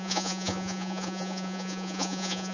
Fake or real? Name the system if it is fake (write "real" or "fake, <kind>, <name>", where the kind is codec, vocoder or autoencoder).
fake, vocoder, Vocos